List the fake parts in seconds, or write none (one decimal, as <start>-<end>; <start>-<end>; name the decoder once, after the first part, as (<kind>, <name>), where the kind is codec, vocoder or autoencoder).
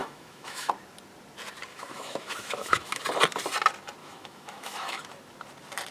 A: 0.0-0.7 (autoencoder, DAC-VAE); 1.7-3.0; 4.0-5.0